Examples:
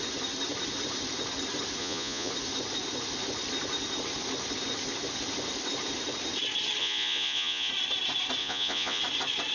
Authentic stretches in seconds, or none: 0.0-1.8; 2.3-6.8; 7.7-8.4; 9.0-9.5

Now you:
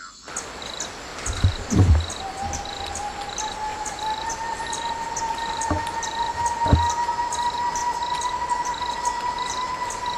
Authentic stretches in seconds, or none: 0.0-1.1; 2.1-3.7; 5.6-10.2

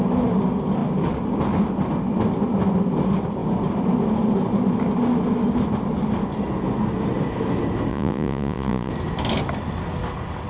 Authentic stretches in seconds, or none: 0.0-7.9; 8.9-10.5

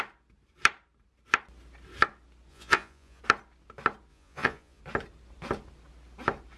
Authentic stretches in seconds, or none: 0.0-2.5; 3.2-4.1; 4.8-6.6